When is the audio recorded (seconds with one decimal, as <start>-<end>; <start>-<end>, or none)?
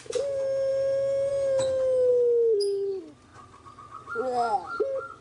0.0-5.2